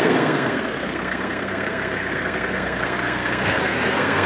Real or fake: fake